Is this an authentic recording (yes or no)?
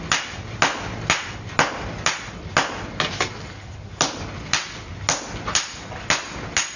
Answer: yes